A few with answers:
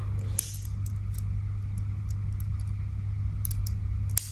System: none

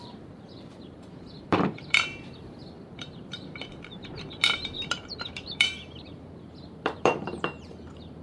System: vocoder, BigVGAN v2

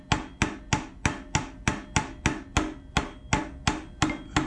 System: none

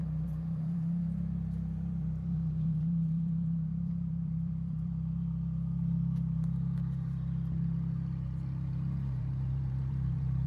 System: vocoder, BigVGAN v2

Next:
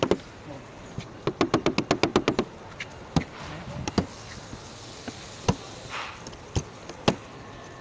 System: none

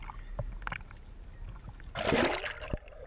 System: none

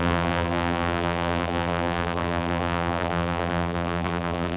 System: vocoder, BigVGAN v2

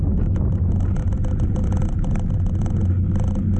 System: none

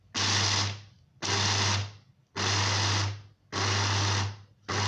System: none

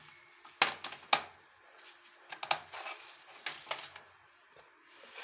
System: none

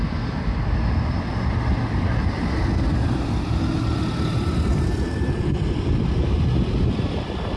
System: vocoder, BigVGAN v2